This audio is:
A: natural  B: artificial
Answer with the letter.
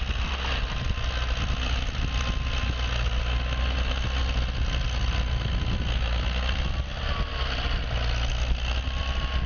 A